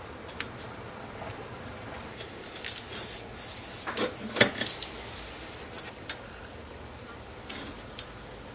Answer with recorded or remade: recorded